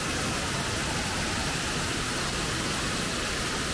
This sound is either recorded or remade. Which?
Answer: recorded